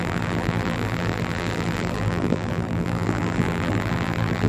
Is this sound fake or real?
fake